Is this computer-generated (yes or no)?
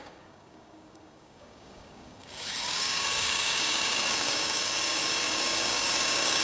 yes